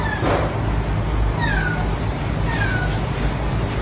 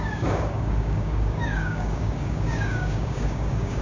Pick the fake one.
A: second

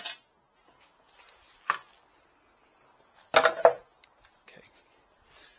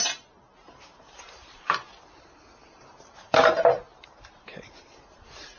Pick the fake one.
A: second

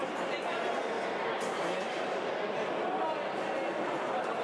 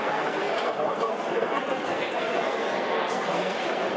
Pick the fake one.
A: second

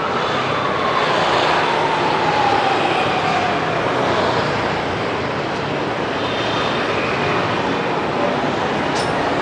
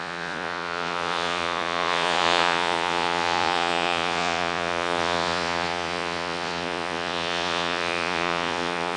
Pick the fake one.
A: second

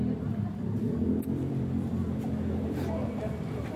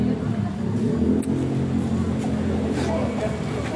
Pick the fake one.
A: first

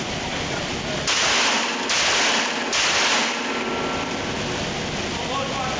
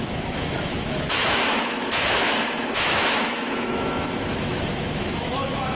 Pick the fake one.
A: second